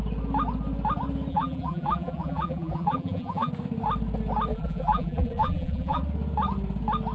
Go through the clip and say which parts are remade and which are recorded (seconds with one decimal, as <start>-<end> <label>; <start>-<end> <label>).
0.0-1.3 recorded; 1.3-3.5 remade; 3.5-4.5 recorded; 4.5-6.0 remade; 6.0-7.1 recorded